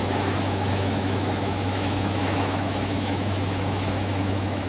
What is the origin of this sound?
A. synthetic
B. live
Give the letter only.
A